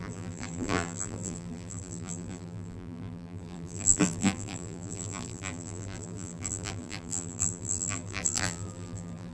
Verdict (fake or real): fake